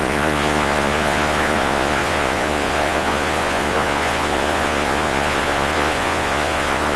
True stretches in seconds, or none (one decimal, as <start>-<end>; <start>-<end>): none